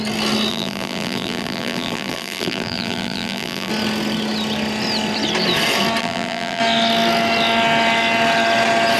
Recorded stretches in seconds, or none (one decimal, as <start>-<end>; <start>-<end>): 0.0-0.5; 3.7-6.0; 6.6-9.0